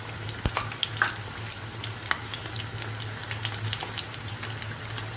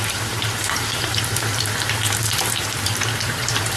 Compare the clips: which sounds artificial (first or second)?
second